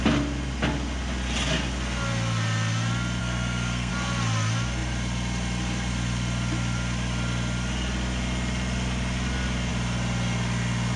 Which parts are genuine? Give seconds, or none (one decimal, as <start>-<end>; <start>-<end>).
0.0-3.2; 3.9-11.0